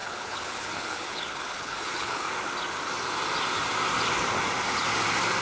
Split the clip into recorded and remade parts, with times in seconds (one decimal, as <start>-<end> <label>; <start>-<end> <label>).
0.0-2.3 remade; 2.3-5.4 recorded